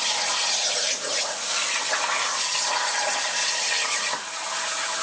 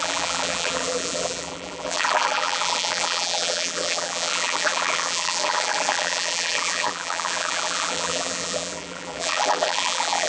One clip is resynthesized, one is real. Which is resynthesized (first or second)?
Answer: second